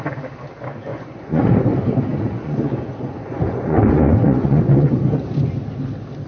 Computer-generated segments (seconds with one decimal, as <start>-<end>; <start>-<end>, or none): 0.9-1.6; 2.1-5.0